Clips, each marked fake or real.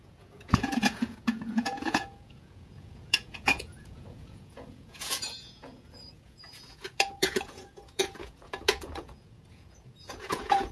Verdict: fake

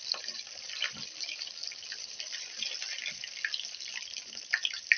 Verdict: fake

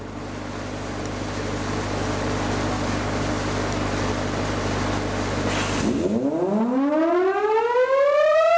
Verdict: real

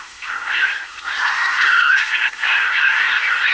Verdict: fake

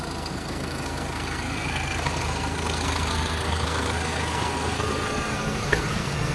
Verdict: fake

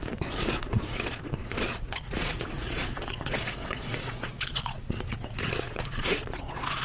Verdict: fake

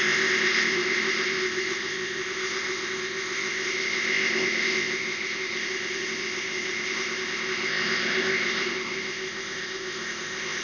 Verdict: fake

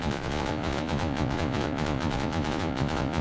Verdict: fake